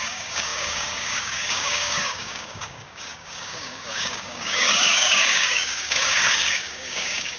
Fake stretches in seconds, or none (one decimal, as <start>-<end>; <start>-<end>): 0.0-7.4